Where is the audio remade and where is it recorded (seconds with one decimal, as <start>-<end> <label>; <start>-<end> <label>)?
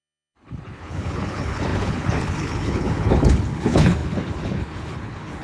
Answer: 0.0-5.4 remade